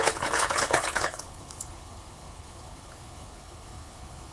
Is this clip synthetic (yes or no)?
yes